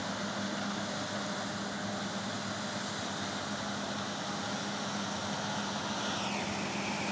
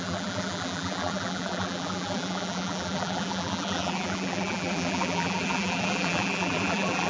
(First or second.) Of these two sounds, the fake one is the second